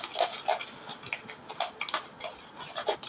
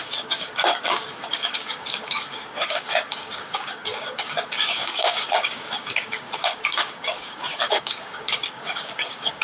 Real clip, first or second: first